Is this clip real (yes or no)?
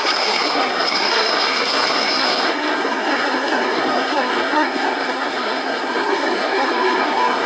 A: no